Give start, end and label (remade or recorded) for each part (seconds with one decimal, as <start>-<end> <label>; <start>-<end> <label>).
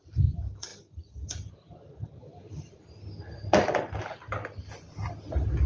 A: 0.0-5.7 recorded